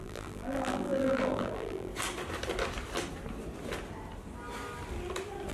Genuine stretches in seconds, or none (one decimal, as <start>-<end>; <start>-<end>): 1.9-5.5